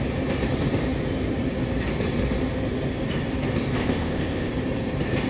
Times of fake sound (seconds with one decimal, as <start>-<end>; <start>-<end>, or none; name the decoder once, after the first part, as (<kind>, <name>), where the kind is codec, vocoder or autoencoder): 3.8-4.5 (codec, ZipCodec)

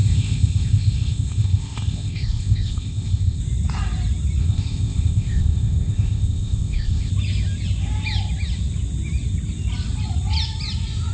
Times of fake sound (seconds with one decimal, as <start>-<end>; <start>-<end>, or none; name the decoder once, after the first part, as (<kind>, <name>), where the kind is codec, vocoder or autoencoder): 0.0-3.4 (codec, ZipCodec); 4.4-7.1

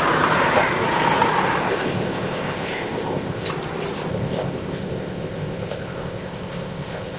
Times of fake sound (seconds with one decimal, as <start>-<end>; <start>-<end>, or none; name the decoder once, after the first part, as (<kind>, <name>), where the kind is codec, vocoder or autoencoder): 1.6-3.5 (codec, ZipCodec); 4.1-7.2

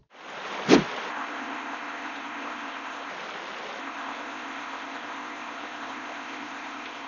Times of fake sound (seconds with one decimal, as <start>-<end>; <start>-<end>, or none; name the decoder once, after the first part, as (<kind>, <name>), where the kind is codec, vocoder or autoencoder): 1.1-3.1 (codec, ZipCodec); 3.8-7.1

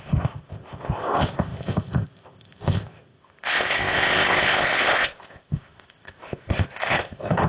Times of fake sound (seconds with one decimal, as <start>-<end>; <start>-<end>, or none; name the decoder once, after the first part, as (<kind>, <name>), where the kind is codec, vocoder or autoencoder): 0.0-7.5 (codec, ZipCodec)

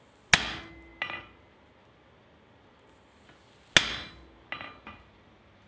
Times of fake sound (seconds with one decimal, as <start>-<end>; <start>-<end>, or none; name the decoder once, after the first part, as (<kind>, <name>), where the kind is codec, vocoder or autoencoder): none

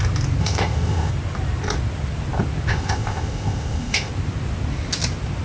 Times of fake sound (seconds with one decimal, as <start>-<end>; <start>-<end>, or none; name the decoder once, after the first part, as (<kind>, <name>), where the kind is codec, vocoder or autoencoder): 0.4-1.1 (codec, ZipCodec); 2.7-4.1

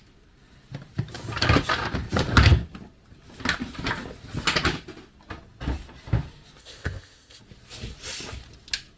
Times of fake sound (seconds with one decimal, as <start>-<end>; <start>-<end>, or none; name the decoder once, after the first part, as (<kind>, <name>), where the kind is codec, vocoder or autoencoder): 6.6-7.4 (codec, ZipCodec)